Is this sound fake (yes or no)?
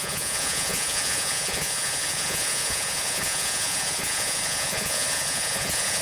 yes